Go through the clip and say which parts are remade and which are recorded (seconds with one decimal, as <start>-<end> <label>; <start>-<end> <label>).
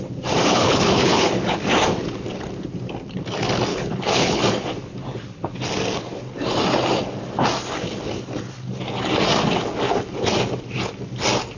0.0-0.5 recorded; 0.5-1.3 remade; 1.3-3.7 recorded; 3.7-4.4 remade; 4.4-11.6 recorded